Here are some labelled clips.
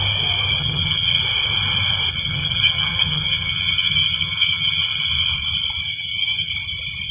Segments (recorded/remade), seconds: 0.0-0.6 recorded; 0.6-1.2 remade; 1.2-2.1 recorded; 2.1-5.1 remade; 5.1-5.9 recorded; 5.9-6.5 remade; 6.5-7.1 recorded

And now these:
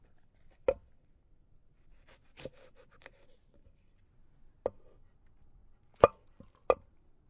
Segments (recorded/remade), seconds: 0.0-7.3 recorded

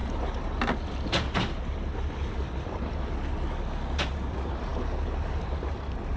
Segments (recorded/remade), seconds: 0.0-6.2 recorded

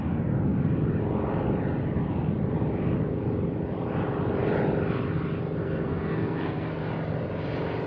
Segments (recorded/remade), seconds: 0.0-5.6 recorded; 5.6-6.7 remade; 6.7-7.9 recorded

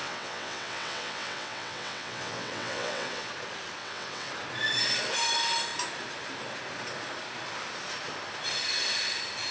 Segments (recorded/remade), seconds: 0.0-3.3 remade; 3.3-3.8 recorded; 3.8-4.3 remade; 4.3-9.5 recorded

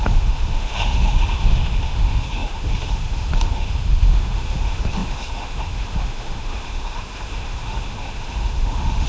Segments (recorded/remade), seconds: 0.0-9.1 remade

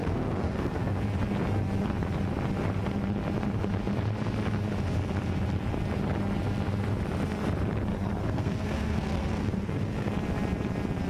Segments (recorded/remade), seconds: 0.0-1.0 remade; 1.0-7.9 recorded; 7.9-10.1 remade; 10.1-11.1 recorded

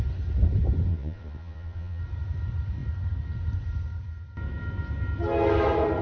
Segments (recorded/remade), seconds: 0.0-0.9 recorded; 0.9-2.0 remade; 2.0-6.0 recorded